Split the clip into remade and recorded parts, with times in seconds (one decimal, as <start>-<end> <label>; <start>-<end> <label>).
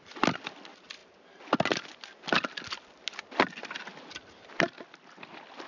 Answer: 0.0-5.7 recorded